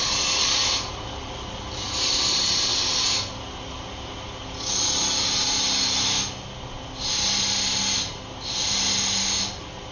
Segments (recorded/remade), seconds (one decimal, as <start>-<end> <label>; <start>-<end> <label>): 0.0-9.9 recorded